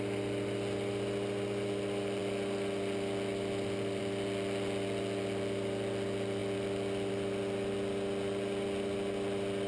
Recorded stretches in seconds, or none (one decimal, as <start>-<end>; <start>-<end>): 0.0-9.7